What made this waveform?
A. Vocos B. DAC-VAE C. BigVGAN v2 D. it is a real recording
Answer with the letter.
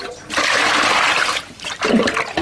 C